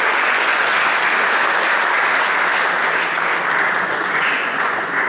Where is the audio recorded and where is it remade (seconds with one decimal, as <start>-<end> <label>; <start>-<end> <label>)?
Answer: 0.0-0.7 remade; 0.7-3.8 recorded; 3.8-5.1 remade